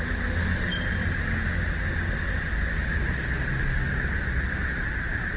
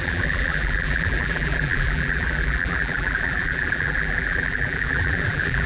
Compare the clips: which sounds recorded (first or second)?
first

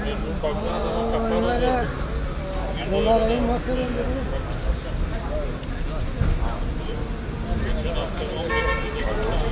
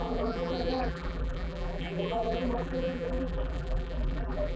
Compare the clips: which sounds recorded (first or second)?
first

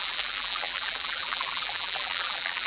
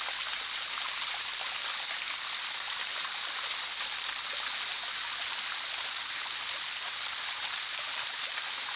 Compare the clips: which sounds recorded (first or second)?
second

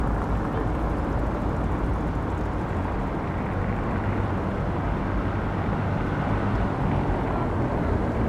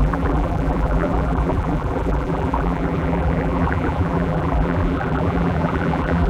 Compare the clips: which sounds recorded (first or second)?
first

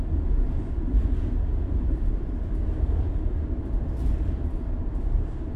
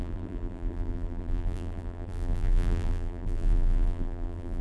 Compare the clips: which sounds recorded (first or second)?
first